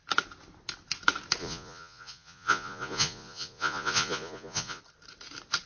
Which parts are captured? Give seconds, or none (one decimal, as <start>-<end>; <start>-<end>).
0.0-1.4; 4.8-5.7